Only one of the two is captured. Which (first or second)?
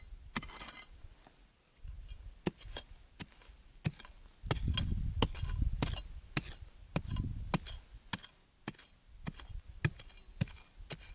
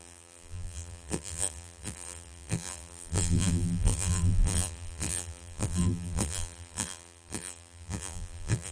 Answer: first